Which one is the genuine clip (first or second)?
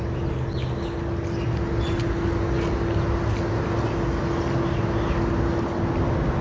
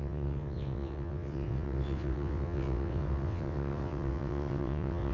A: first